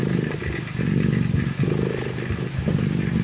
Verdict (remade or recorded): recorded